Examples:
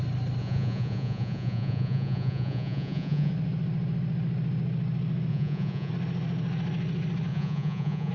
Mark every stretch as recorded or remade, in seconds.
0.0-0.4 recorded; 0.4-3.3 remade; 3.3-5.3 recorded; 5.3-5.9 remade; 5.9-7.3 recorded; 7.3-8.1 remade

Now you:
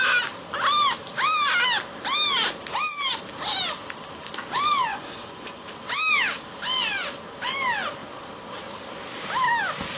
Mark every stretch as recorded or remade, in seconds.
0.0-4.9 recorded; 4.9-5.7 remade; 5.7-10.0 recorded

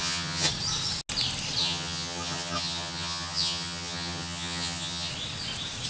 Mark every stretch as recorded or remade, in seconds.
0.0-0.5 remade; 0.5-1.6 recorded; 1.6-5.1 remade; 5.1-5.9 recorded

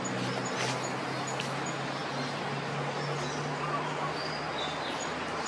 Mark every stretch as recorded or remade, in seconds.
0.0-5.5 recorded

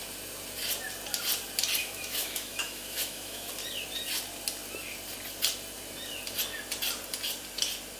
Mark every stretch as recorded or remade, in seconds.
0.0-1.8 recorded; 1.8-3.5 remade; 3.5-8.0 recorded